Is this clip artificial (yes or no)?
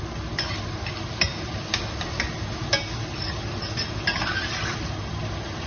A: no